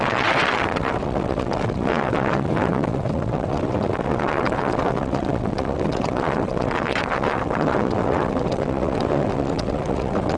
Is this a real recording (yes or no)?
no